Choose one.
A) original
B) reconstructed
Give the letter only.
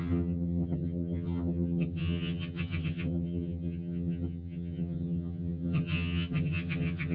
B